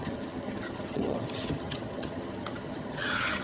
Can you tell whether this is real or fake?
fake